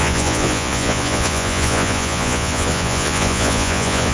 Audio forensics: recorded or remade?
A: remade